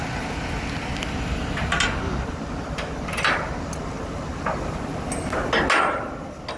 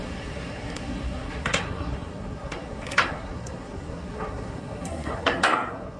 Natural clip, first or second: first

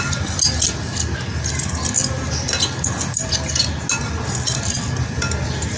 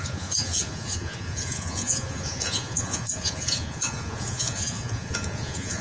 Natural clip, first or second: first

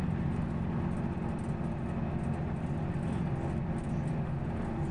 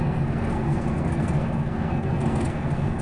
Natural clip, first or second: first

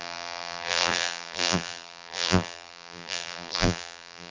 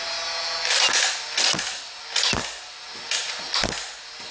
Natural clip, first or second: second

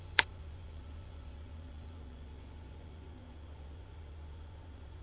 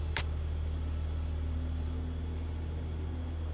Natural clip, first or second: second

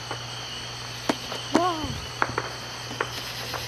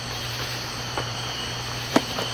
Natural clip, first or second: first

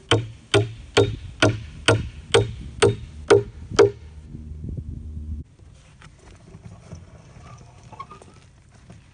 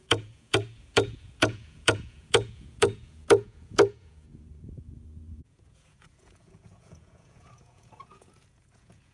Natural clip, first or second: first